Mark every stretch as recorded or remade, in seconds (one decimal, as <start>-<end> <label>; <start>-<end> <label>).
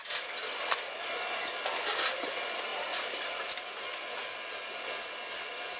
0.0-5.8 recorded